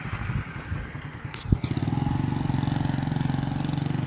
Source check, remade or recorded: recorded